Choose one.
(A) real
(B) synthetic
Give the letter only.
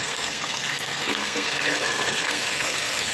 B